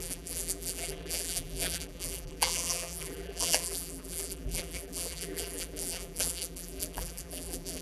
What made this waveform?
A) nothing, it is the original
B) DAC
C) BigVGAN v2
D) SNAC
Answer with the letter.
C